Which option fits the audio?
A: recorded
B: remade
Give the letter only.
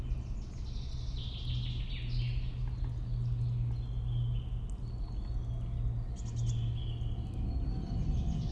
A